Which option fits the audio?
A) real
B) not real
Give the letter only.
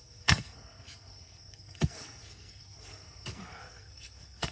B